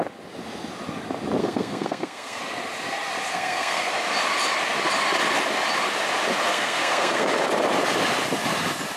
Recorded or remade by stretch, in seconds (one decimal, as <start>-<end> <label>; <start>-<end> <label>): 0.0-1.4 recorded; 1.4-2.4 remade; 2.4-3.3 recorded; 3.3-3.9 remade; 3.9-6.5 recorded; 6.5-7.3 remade; 7.3-9.0 recorded